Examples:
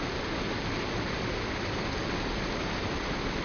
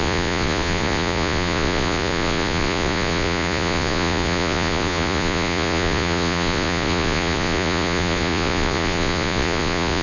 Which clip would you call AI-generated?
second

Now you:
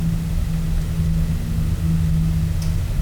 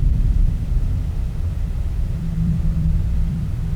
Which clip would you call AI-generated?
second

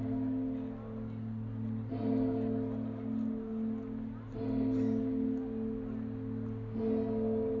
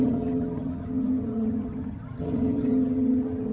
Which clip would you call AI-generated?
second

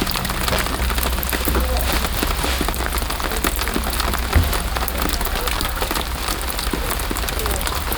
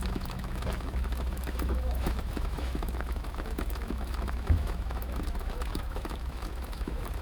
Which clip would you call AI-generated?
second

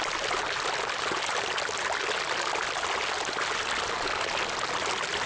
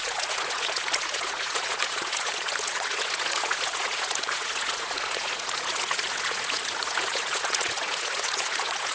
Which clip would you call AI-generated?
second